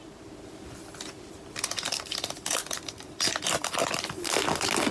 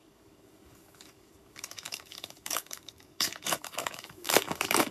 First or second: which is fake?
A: second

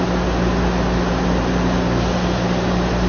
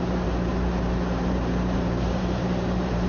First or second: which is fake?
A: second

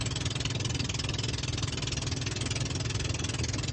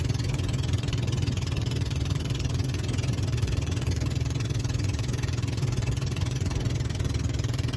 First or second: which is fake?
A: second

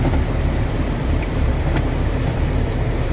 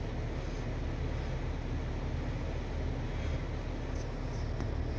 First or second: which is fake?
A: first